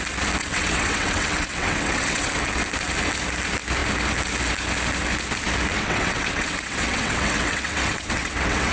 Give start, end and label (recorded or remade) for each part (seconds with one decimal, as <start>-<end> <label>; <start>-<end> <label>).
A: 0.0-0.4 recorded; 0.4-2.3 remade; 2.3-5.7 recorded; 5.7-8.7 remade